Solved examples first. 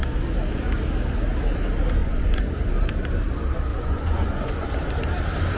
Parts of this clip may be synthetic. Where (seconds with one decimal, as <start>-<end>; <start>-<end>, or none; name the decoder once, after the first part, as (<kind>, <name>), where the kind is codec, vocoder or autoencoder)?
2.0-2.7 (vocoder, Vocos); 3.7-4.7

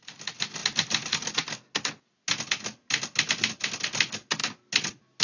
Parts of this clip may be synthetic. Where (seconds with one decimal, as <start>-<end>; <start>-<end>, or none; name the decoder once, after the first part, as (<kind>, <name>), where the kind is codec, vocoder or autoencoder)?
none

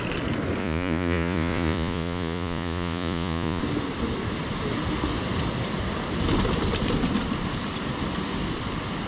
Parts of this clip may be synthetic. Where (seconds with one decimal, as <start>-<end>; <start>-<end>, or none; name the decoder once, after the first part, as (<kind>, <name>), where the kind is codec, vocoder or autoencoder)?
0.6-3.6 (vocoder, Vocos)

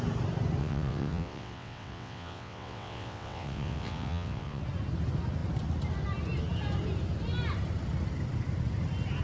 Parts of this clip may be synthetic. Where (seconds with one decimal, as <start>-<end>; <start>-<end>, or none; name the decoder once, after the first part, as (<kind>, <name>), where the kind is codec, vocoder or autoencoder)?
0.6-4.6 (vocoder, WaveNeXt)

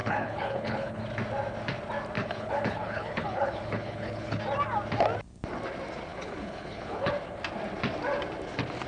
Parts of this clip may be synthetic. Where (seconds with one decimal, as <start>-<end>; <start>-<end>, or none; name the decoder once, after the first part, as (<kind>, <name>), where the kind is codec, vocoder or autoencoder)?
0.0-1.0 (codec, HILCodec); 2.2-4.4; 6.1-7.1

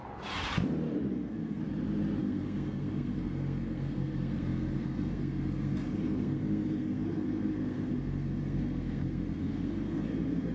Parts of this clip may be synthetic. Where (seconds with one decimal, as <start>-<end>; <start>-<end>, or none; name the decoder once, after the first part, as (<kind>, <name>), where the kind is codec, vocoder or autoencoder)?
1.1-1.6 (codec, SNAC); 2.2-10.5

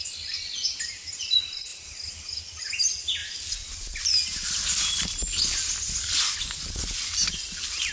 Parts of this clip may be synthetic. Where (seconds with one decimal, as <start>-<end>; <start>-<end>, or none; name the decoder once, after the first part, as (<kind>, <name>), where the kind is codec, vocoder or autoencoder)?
none

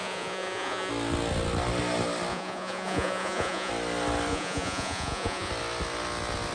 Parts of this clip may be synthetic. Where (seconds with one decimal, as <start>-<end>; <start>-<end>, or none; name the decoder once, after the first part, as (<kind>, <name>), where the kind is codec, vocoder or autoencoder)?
0.0-0.9 (vocoder, Vocos); 2.3-3.7; 4.3-5.5